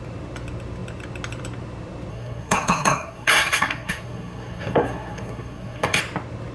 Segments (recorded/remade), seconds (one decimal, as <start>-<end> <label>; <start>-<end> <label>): 0.0-2.1 recorded; 2.1-6.0 remade; 6.0-6.5 recorded